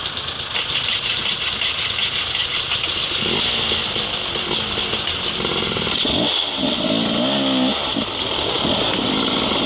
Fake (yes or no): no